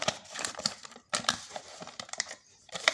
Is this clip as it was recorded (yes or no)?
no